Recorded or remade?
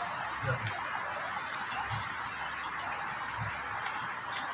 recorded